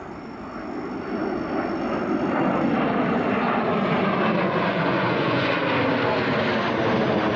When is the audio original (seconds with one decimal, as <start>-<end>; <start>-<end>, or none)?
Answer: 0.0-4.4; 5.5-7.4